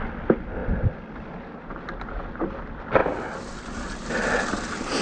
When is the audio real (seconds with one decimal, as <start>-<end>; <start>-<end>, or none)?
0.0-5.0